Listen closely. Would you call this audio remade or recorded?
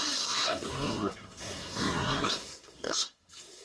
remade